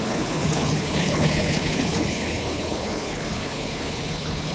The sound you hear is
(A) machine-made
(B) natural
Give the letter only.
A